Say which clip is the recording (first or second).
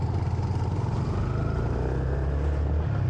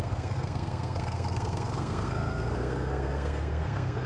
first